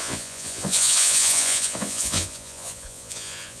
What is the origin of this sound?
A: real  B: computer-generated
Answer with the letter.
B